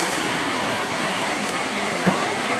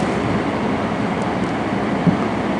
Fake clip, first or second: first